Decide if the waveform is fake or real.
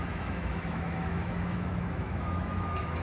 fake